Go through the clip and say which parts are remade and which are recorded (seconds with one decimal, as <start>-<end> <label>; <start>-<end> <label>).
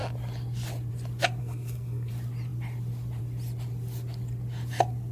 0.0-1.4 recorded; 1.4-2.1 remade; 2.1-5.1 recorded